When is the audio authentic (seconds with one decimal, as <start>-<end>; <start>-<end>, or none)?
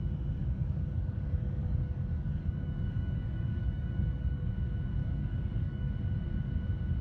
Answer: 0.0-0.4; 4.5-5.0; 5.9-7.0